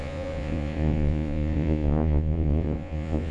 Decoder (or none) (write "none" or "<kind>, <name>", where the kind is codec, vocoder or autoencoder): vocoder, Vocos